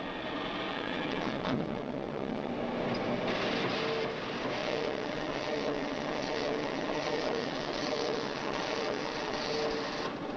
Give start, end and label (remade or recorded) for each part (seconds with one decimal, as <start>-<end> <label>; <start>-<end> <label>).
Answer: 0.0-0.7 recorded; 0.7-2.5 remade; 2.5-4.6 recorded; 4.6-9.5 remade; 9.5-10.4 recorded